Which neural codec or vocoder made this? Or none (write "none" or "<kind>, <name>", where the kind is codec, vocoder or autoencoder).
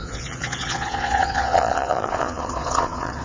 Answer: vocoder, Vocos